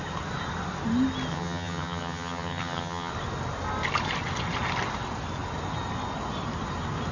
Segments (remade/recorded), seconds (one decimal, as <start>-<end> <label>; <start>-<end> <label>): 0.0-1.3 recorded; 1.3-3.1 remade; 3.1-7.1 recorded